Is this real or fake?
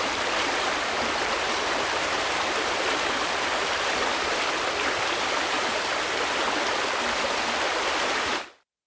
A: real